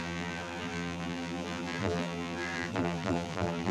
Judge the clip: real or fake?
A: fake